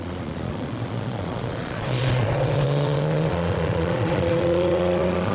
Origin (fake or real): fake